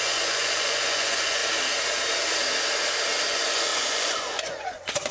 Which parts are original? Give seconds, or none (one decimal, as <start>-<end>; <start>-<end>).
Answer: 1.4-3.3